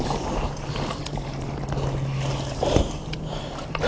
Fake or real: real